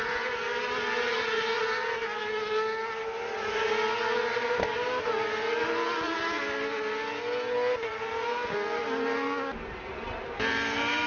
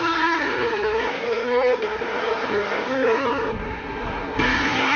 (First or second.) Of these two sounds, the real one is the first